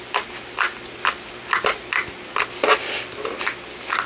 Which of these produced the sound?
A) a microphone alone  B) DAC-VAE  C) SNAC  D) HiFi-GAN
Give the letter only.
A